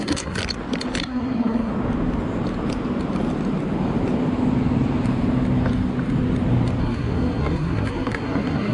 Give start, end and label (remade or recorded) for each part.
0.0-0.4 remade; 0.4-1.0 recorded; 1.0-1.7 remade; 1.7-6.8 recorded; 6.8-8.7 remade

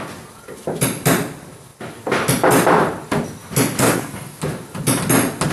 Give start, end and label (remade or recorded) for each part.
0.0-3.8 recorded; 3.8-4.4 remade; 4.4-5.5 recorded